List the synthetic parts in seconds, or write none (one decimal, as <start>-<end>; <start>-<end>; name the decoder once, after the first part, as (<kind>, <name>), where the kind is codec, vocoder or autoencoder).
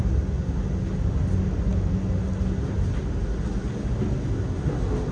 none